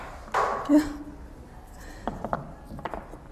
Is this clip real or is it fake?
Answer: real